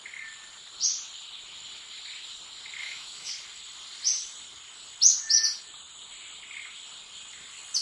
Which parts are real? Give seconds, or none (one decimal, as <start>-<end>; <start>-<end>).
0.0-2.8; 3.3-7.8